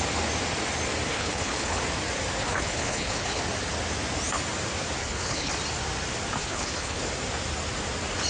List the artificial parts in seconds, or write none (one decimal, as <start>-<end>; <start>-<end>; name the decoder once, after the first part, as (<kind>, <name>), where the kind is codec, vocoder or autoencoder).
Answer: 1.1-1.8 (codec, HILCodec); 2.4-3.4; 5.0-5.5; 6.4-7.0